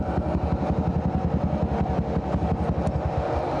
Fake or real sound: real